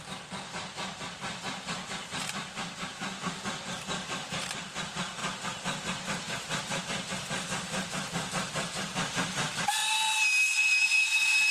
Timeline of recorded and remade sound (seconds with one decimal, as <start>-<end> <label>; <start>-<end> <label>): 0.0-5.2 remade; 5.2-6.8 recorded; 6.8-9.8 remade; 9.8-10.9 recorded; 10.9-11.5 remade